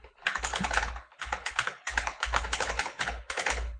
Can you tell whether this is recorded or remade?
remade